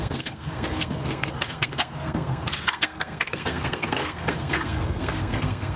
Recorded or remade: remade